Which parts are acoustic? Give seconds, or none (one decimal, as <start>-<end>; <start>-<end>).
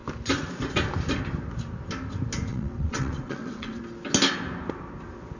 0.0-2.5; 3.8-5.4